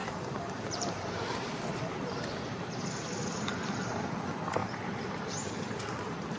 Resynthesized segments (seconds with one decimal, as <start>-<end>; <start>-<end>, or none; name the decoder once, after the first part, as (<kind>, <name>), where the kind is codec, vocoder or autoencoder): 0.0-3.0 (vocoder, BigVGAN v2); 4.6-6.4